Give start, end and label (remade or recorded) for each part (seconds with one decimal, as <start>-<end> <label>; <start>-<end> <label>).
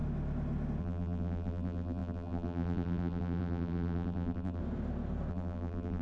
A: 0.0-0.8 recorded; 0.8-4.6 remade; 4.6-5.3 recorded; 5.3-6.0 remade